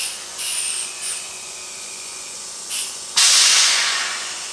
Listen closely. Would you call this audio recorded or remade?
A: remade